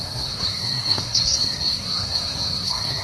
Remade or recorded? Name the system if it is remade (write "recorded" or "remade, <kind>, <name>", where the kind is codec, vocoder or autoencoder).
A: remade, codec, SNAC